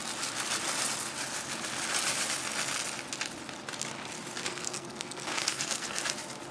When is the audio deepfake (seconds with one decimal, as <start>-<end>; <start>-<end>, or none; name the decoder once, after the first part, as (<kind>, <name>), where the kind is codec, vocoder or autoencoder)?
4.4-6.0 (codec, SNAC)